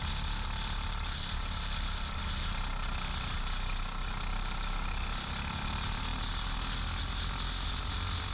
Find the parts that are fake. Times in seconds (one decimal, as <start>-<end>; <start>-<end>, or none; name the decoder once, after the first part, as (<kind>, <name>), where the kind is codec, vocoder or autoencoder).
none